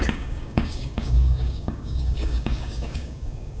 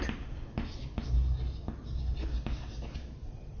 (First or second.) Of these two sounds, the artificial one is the first